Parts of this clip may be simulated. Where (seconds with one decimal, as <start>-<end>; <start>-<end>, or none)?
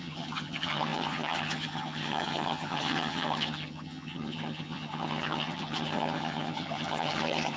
0.0-7.6